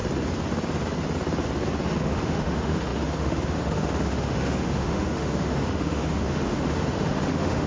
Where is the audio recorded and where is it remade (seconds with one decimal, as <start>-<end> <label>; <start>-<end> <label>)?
0.0-2.0 recorded; 2.0-7.7 remade